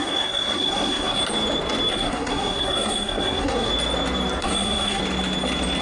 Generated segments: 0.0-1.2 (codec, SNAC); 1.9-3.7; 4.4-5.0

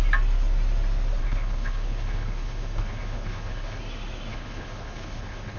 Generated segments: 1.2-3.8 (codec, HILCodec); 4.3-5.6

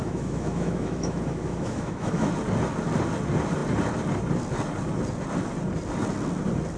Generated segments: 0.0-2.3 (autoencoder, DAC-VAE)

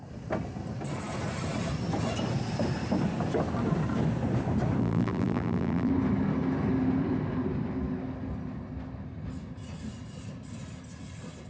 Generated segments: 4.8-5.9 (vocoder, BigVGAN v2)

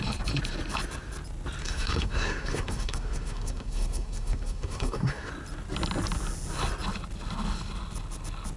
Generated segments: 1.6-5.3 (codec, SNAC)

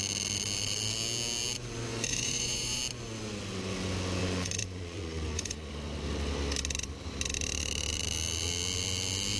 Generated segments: 1.9-2.8 (vocoder, Vocos); 4.2-5.7